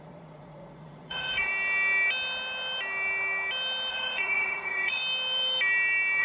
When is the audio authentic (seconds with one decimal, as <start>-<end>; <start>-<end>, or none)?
1.5-3.9; 5.0-6.2